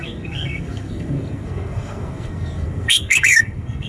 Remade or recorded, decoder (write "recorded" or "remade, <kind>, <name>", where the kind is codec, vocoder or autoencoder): remade, codec, SNAC